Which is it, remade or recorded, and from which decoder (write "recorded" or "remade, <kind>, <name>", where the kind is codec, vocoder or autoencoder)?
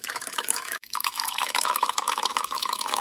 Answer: remade, autoencoder, DAC-VAE